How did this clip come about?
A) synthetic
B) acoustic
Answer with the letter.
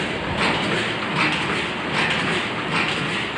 B